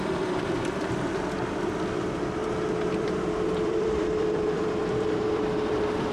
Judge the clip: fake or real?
fake